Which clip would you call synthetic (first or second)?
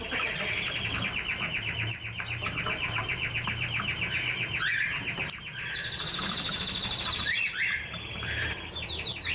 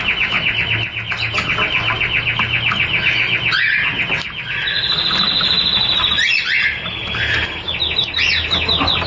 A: first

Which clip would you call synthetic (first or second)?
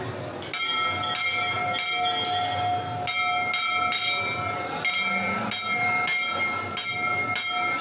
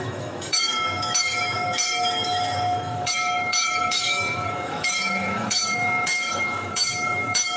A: second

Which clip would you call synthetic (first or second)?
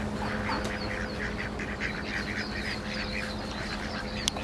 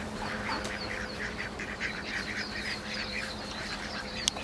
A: second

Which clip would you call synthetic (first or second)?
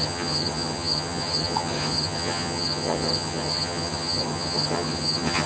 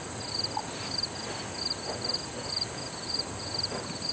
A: first